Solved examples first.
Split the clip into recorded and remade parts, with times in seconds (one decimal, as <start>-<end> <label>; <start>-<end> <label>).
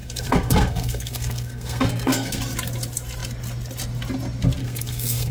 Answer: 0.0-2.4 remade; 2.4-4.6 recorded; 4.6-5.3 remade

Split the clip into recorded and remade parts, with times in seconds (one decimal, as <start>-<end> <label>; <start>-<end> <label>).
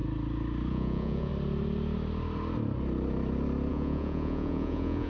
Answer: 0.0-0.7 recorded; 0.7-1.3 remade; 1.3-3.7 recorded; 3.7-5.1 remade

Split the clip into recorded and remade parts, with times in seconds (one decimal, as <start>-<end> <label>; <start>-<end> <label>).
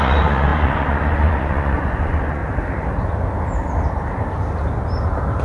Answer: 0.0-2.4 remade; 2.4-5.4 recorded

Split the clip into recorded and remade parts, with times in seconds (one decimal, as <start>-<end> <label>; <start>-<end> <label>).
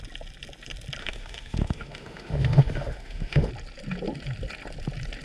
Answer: 0.0-1.0 recorded; 1.0-3.5 remade; 3.5-5.2 recorded